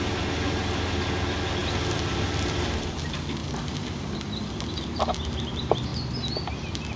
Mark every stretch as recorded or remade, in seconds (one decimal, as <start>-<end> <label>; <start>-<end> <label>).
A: 0.0-3.4 recorded; 3.4-4.1 remade; 4.1-7.0 recorded